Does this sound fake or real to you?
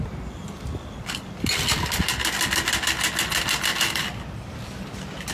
real